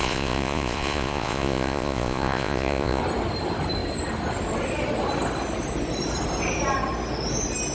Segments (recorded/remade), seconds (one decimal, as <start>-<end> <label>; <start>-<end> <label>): 0.0-3.0 remade; 3.0-7.7 recorded